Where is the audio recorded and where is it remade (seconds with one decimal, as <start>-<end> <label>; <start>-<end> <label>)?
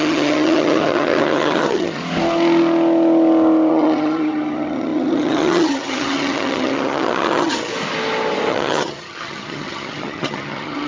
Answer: 0.0-2.0 remade; 2.0-3.7 recorded; 3.7-7.7 remade; 7.7-8.5 recorded; 8.5-10.9 remade